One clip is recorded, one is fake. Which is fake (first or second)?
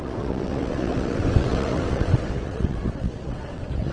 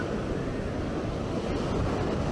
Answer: first